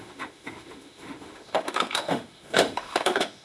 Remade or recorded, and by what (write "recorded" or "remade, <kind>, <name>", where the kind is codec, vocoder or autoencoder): remade, autoencoder, DAC-VAE